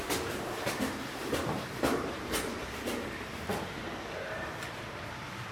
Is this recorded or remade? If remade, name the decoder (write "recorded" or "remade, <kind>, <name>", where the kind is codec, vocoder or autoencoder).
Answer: remade, vocoder, BigVGAN v2